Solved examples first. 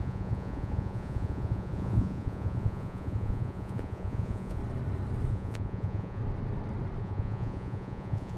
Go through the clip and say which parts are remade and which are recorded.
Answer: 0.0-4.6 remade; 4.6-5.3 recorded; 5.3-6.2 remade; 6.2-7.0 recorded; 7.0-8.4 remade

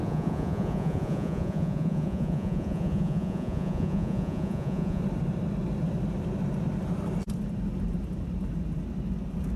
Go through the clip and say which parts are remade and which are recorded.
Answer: 0.0-5.0 remade; 5.0-9.6 recorded

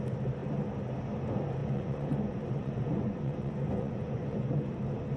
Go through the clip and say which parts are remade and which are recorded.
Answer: 0.0-1.6 recorded; 1.6-4.7 remade; 4.7-5.2 recorded

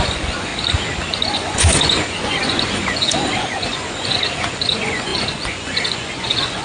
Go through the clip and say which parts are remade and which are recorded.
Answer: 0.0-0.5 remade; 0.5-1.1 recorded; 1.1-6.6 remade